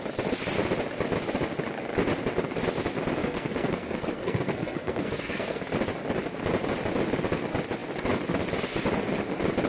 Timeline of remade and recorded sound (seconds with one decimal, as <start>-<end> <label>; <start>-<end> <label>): 0.0-3.2 recorded; 3.2-5.7 remade; 5.7-9.7 recorded